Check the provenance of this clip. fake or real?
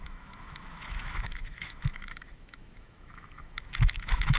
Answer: fake